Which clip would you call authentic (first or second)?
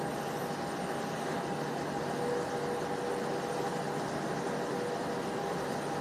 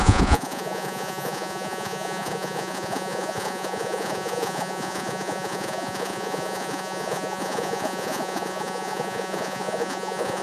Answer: first